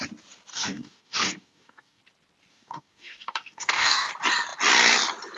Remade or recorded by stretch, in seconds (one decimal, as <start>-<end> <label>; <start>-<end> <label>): 0.0-0.5 recorded; 0.5-2.0 remade; 2.0-2.5 recorded; 2.5-4.1 remade; 4.1-5.4 recorded